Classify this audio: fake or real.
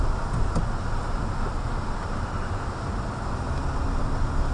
real